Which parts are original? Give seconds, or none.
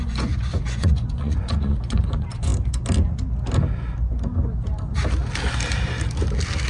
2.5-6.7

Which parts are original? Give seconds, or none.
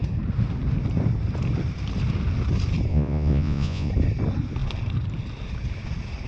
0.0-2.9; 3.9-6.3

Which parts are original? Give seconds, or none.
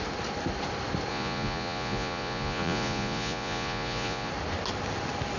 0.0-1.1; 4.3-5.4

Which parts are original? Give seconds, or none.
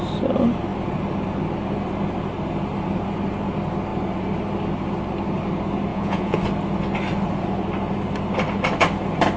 0.0-5.9; 6.4-9.4